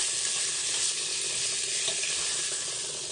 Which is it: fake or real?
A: real